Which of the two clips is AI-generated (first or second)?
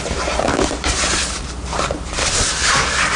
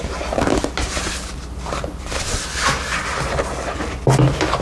first